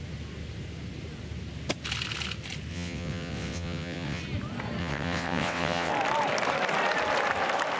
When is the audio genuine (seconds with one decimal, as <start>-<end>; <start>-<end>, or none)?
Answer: 0.0-2.7; 4.2-4.8; 5.9-7.8